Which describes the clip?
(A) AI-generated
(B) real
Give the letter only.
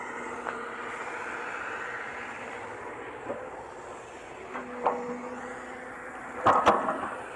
B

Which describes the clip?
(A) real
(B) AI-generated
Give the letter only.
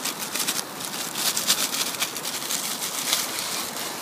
A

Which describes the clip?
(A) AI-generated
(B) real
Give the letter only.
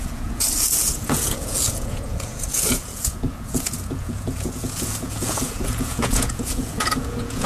A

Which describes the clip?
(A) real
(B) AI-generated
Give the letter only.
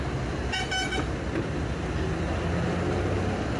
A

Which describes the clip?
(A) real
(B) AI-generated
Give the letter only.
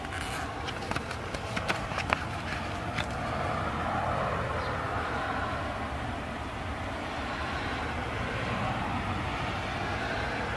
A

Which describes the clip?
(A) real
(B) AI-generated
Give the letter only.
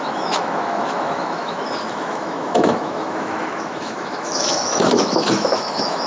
B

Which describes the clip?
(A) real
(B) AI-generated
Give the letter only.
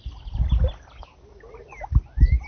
A